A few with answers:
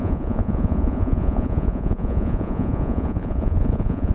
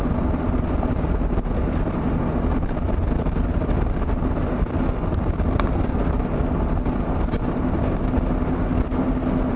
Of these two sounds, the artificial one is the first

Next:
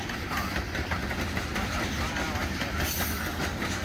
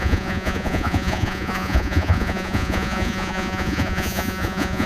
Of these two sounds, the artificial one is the second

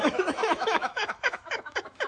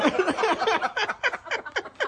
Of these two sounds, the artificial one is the first